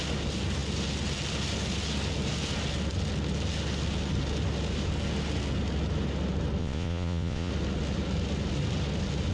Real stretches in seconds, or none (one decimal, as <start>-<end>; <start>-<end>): 0.0-6.6; 7.5-9.3